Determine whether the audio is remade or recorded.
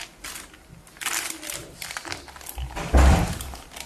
remade